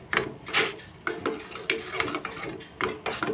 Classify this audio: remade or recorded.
recorded